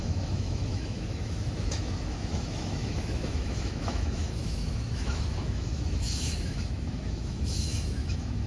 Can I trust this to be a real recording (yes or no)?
no